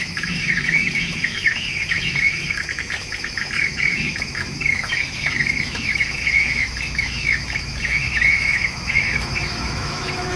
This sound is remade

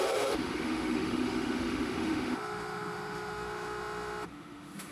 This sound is remade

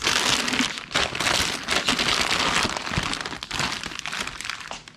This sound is recorded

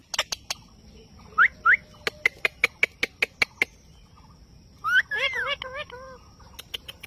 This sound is recorded